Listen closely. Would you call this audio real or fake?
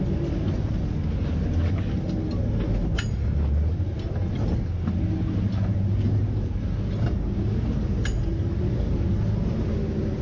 real